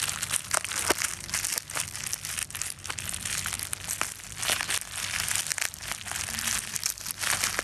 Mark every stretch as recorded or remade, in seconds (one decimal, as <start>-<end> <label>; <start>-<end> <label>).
0.0-7.6 recorded